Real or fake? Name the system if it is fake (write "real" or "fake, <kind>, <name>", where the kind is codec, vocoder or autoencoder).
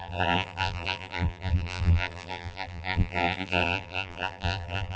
fake, vocoder, BigVGAN v2